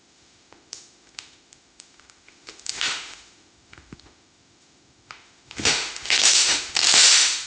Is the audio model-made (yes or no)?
yes